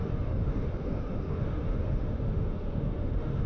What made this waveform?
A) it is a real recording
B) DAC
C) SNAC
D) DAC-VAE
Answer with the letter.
D